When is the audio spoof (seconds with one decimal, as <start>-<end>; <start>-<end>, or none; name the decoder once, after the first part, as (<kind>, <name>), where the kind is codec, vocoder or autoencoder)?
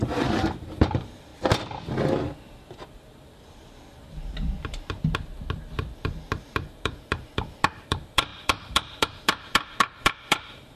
0.0-1.3 (vocoder, BigVGAN v2); 6.4-10.8